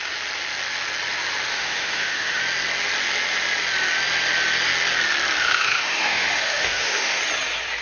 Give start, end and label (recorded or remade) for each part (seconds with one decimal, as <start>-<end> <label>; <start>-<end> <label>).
0.0-1.5 recorded; 1.5-2.4 remade; 2.4-5.4 recorded; 5.4-7.2 remade; 7.2-7.8 recorded